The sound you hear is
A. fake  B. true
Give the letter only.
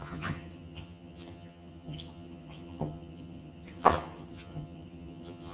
A